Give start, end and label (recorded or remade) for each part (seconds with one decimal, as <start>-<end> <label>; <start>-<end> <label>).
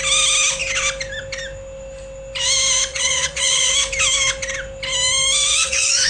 0.0-2.9 recorded; 2.9-3.7 remade; 3.7-5.5 recorded; 5.5-6.1 remade